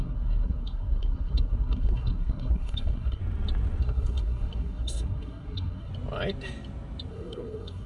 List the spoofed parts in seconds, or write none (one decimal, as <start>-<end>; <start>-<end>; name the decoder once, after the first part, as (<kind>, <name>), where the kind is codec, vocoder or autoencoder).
0.0-3.2 (codec, SNAC); 3.8-5.9; 7.1-7.9